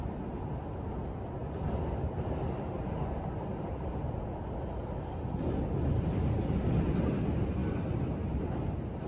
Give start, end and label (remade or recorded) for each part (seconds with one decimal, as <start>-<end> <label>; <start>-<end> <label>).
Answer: 0.0-9.1 recorded